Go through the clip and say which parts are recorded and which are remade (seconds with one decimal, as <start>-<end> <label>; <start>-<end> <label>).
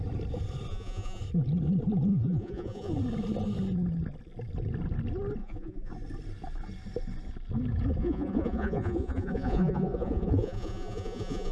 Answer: 0.0-0.7 recorded; 0.7-1.2 remade; 1.2-2.1 recorded; 2.1-2.9 remade; 2.9-5.4 recorded; 5.4-5.9 remade; 5.9-8.0 recorded; 8.0-11.5 remade